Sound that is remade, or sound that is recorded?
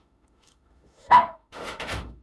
remade